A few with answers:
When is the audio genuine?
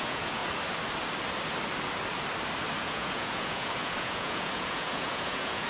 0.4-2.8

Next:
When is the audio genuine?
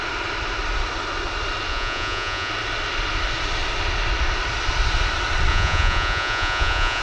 0.0-1.7; 2.5-5.5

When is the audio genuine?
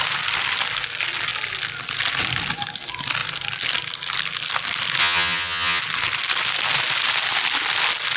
0.0-5.0; 5.8-8.2